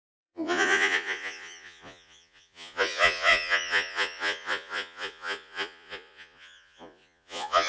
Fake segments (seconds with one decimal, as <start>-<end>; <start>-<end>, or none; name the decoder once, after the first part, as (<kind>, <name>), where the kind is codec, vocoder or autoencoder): 0.0-7.7 (vocoder, Vocos)